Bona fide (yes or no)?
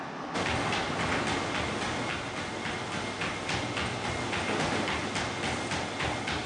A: yes